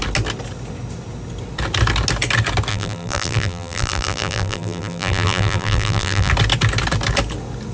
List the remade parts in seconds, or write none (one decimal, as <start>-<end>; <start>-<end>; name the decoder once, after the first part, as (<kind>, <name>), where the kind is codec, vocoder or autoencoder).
2.7-6.3 (vocoder, BigVGAN v2)